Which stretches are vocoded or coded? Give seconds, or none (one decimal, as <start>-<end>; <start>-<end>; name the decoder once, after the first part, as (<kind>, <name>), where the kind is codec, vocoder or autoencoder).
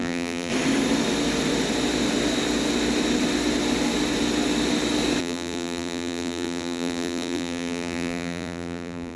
0.0-0.5 (vocoder, BigVGAN v2); 5.2-9.2